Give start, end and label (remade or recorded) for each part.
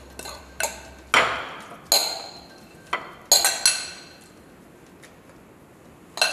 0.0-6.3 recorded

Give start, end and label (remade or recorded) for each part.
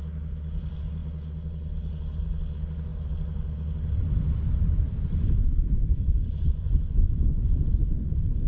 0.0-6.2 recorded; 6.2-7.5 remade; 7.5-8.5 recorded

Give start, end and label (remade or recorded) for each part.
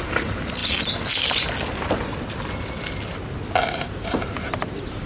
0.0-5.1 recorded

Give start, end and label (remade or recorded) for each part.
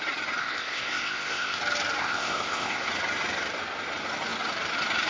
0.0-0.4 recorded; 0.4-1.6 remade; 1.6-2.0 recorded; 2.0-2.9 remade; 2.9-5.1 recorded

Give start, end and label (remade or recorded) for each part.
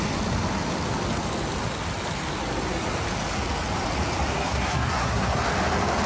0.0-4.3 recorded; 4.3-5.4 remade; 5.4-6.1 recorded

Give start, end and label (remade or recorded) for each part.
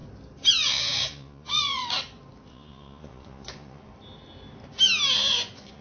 0.0-0.5 recorded; 0.5-1.8 remade; 1.8-2.5 recorded; 2.5-3.9 remade; 3.9-5.3 recorded; 5.3-5.8 remade